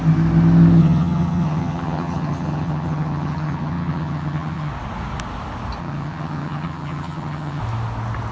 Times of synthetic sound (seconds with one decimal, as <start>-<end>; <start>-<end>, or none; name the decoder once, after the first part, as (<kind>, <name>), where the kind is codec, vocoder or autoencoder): 0.8-4.7 (vocoder, HiFi-GAN); 5.8-7.6